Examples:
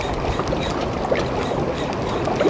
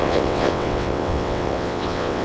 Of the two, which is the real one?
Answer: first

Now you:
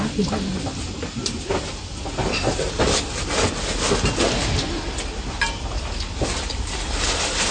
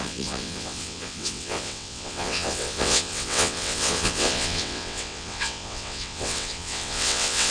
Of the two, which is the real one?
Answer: first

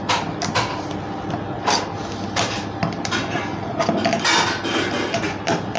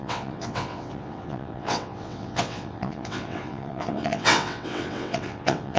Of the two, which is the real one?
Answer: first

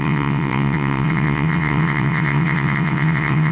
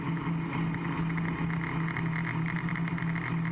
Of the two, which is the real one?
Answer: second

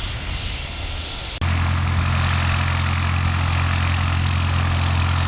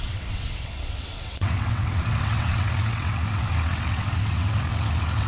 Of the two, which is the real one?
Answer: first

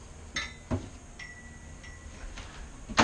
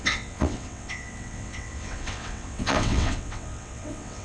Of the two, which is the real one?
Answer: first